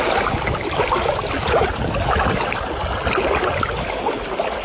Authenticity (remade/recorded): recorded